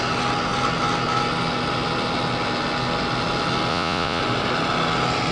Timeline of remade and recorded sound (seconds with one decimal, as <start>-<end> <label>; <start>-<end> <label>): 0.0-3.7 recorded; 3.7-4.2 remade; 4.2-5.3 recorded

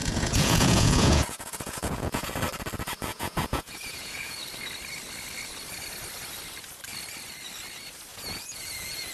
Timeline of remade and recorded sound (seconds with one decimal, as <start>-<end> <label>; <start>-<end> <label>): 0.0-2.3 remade; 2.3-3.1 recorded; 3.1-4.4 remade; 4.4-8.1 recorded; 8.1-9.1 remade

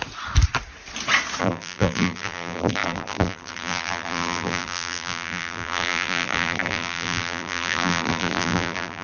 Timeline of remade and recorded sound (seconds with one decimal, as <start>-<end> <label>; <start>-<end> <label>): 0.0-1.4 recorded; 1.4-9.0 remade

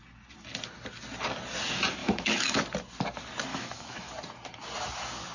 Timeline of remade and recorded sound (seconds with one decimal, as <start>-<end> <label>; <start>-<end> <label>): 0.0-2.0 recorded; 2.0-2.6 remade; 2.6-3.5 recorded; 3.5-4.1 remade; 4.1-5.3 recorded

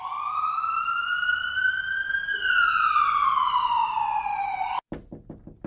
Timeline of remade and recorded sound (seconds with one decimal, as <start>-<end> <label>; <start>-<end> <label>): 0.0-1.2 recorded; 1.2-1.7 remade; 1.7-2.1 recorded; 2.1-3.3 remade; 3.3-5.7 recorded

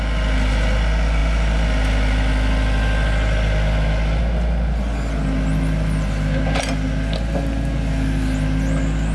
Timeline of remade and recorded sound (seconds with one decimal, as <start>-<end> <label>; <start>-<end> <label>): 0.0-9.1 recorded

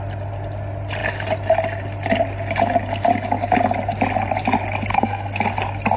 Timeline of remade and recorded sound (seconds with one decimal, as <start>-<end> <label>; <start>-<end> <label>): 0.0-4.9 recorded; 4.9-5.4 remade; 5.4-6.0 recorded

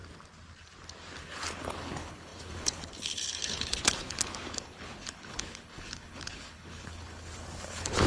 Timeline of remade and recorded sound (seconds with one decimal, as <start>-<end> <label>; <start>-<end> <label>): 0.0-1.2 recorded; 1.2-8.1 remade